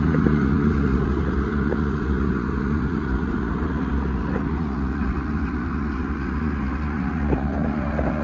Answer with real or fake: fake